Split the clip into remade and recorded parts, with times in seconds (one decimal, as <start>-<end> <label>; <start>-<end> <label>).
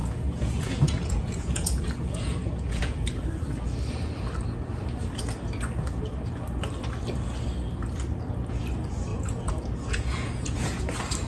0.0-3.1 remade; 3.1-9.1 recorded; 9.1-10.8 remade; 10.8-11.3 recorded